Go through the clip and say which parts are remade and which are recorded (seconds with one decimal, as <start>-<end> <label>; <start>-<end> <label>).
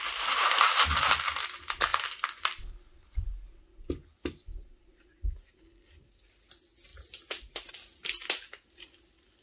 0.0-1.9 recorded; 1.9-2.6 remade; 2.6-9.4 recorded